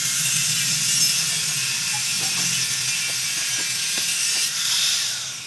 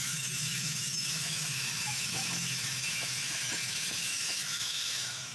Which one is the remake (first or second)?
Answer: second